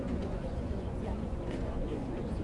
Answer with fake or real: fake